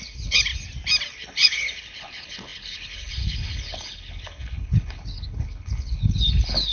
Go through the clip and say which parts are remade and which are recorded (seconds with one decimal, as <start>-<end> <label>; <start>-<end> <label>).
0.0-0.5 remade; 0.5-1.1 recorded; 1.1-6.7 remade